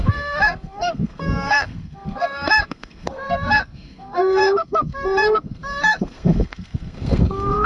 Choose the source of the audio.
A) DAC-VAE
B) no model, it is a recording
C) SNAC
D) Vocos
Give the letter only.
C